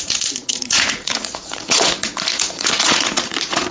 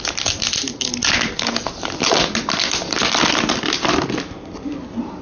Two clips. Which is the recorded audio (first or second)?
second